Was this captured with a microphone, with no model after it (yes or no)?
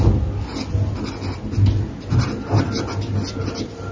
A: yes